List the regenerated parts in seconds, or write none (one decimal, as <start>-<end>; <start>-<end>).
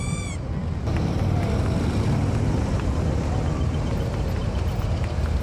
none